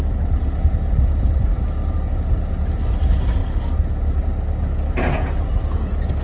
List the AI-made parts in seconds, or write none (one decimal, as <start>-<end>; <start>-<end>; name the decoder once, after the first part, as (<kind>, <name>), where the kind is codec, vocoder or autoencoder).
none